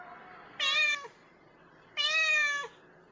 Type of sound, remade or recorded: recorded